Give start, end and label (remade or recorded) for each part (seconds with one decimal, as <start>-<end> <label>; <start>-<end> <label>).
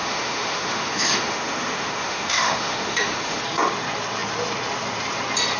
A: 0.0-3.4 remade; 3.4-5.6 recorded